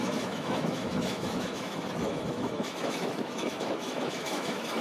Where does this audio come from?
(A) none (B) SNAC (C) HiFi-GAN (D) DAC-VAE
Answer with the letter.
D